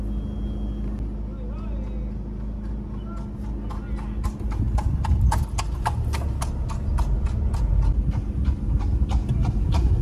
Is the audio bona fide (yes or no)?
yes